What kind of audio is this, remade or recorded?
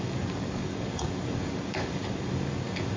remade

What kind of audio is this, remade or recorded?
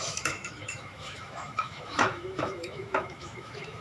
remade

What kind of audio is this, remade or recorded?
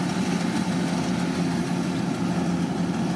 recorded